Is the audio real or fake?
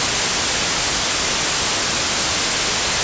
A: real